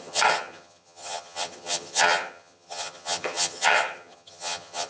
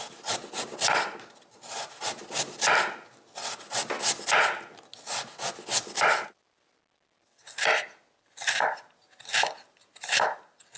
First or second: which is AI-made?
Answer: first